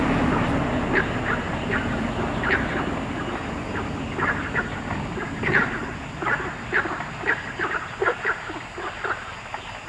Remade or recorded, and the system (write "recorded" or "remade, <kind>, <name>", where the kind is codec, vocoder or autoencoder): recorded